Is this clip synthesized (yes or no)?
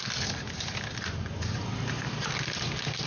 no